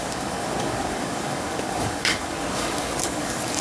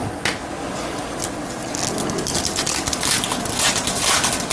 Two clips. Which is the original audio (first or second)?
second